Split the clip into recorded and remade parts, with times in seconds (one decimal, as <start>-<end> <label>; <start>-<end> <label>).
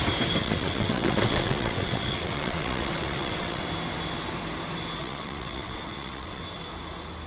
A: 0.0-0.4 recorded; 0.4-3.6 remade; 3.6-5.0 recorded; 5.0-6.4 remade; 6.4-7.3 recorded